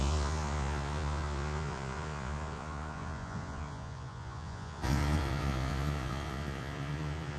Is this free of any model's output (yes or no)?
no